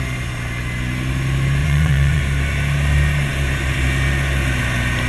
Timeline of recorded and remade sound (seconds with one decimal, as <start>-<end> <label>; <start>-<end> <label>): 0.0-1.6 recorded; 1.6-2.2 remade; 2.2-5.1 recorded